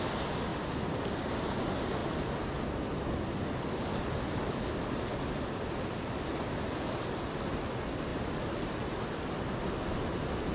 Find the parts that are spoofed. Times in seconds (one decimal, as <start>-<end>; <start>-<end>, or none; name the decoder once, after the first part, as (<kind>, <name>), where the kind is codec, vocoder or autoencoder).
none